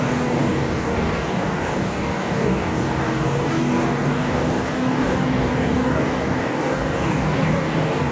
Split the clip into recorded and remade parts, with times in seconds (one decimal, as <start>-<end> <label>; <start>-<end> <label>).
0.0-8.1 remade